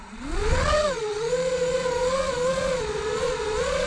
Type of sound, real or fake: fake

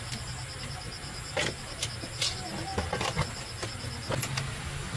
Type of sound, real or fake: real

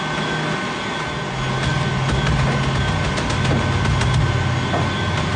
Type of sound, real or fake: real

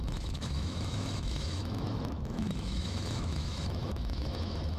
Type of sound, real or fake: fake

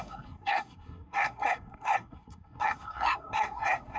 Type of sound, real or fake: fake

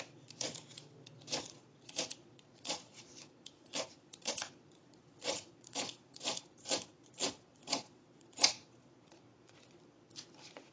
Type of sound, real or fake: fake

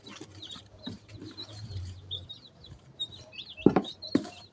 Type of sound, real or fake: fake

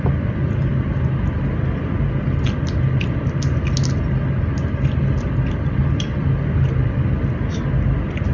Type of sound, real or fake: real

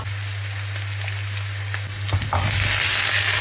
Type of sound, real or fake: real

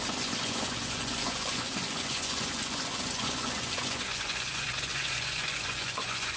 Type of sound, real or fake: fake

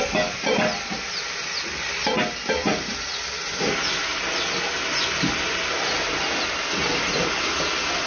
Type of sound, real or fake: real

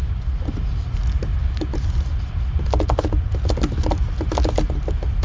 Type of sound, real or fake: real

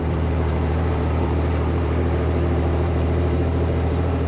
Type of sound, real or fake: fake